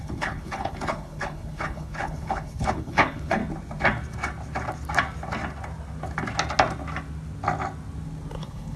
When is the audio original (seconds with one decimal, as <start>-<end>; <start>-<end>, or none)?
3.4-8.4